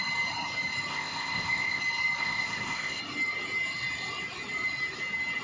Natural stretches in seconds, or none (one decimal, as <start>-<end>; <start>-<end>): 0.0-0.9; 1.8-2.2; 3.0-5.4